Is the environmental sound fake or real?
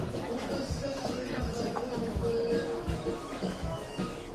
fake